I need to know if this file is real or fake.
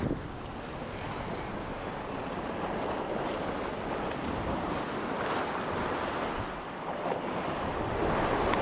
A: real